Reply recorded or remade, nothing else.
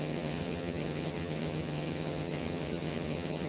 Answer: remade